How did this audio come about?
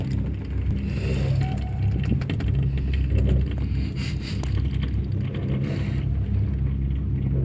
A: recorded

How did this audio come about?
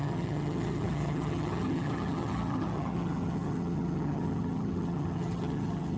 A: remade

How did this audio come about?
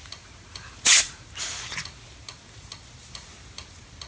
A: recorded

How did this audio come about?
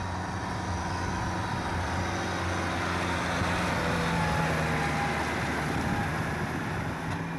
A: recorded